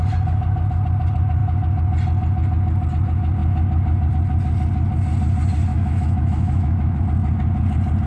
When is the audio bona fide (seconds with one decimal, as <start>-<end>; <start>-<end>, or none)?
0.0-5.7; 7.0-8.1